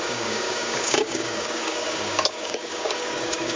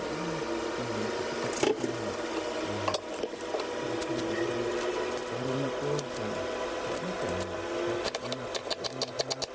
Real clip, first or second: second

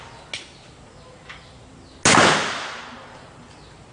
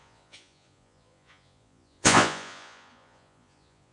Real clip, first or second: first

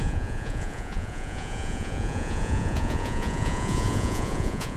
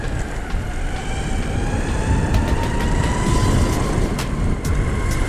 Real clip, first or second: second